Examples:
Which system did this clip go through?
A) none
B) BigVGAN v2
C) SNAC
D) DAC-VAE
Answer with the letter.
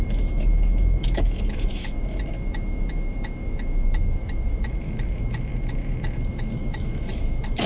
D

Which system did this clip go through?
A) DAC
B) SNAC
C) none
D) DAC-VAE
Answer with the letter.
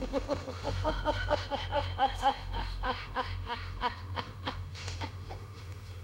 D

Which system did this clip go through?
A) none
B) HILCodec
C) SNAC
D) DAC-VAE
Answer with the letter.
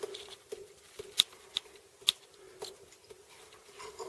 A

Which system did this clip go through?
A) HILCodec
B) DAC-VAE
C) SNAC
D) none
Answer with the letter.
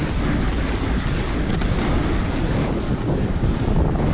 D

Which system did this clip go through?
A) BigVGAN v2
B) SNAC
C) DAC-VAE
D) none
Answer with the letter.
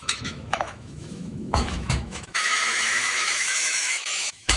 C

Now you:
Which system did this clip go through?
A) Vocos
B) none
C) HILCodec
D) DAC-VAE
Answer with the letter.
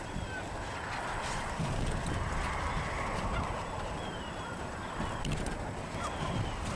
B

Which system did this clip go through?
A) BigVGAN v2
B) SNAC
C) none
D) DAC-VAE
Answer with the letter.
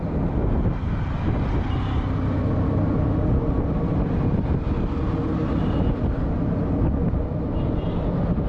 C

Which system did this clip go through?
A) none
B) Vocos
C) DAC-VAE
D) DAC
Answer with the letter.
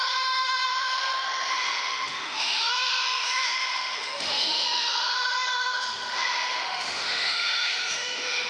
C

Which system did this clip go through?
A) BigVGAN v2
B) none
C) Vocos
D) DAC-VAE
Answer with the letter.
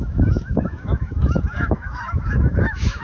D